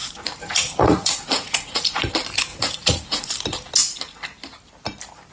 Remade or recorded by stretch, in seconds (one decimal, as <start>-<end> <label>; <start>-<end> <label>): 0.0-2.1 remade; 2.1-2.5 recorded; 2.5-3.3 remade; 3.3-5.3 recorded